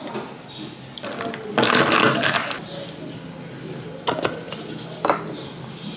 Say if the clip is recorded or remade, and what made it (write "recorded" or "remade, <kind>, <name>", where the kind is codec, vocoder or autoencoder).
recorded